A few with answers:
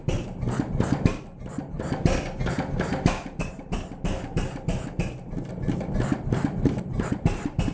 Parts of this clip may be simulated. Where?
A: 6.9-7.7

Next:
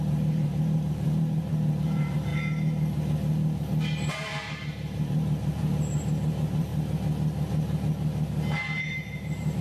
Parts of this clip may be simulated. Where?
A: 0.0-2.3; 4.1-6.7; 8.9-9.6

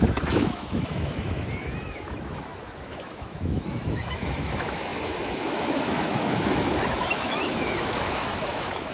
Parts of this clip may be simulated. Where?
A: 0.0-8.9